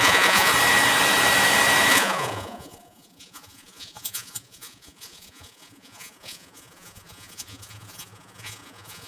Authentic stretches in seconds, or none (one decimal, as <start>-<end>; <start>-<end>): 0.5-1.9